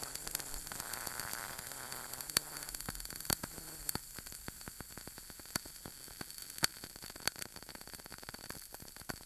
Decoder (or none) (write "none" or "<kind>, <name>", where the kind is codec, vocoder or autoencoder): none